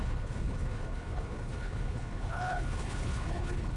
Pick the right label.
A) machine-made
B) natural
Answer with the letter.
A